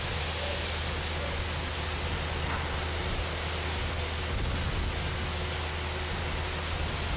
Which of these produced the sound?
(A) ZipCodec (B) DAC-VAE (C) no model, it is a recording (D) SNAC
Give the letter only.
C